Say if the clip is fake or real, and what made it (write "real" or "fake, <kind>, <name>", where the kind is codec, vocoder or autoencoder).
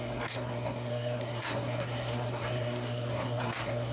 fake, codec, SNAC